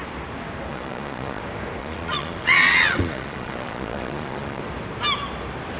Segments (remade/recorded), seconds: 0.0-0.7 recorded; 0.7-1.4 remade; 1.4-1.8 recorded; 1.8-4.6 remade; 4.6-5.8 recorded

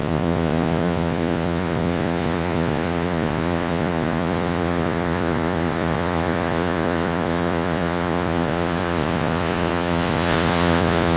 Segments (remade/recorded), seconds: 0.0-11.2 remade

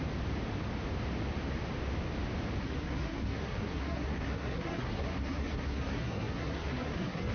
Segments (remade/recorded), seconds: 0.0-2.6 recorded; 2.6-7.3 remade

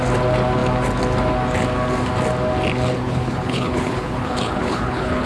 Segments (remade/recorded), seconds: 0.0-2.9 recorded; 2.9-5.3 remade

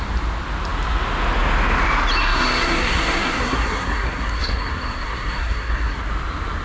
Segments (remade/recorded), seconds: 0.0-2.2 recorded; 2.2-6.0 remade; 6.0-6.6 recorded